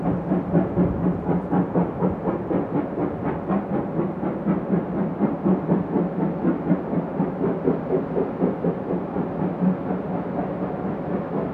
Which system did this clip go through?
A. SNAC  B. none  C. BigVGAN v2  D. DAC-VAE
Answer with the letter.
B